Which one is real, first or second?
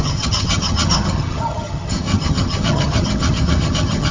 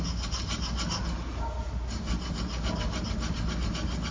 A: second